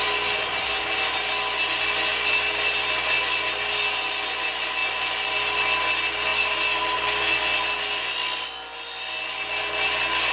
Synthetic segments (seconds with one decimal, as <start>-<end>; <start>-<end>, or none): none